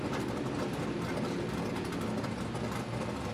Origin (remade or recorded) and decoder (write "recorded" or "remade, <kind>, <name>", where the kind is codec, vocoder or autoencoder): recorded